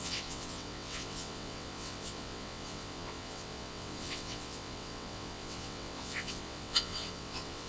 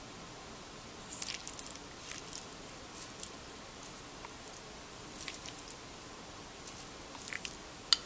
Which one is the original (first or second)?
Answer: second